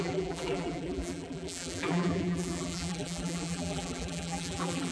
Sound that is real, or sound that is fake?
fake